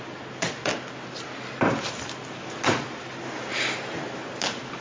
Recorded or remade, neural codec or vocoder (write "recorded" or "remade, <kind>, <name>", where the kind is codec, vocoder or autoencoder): recorded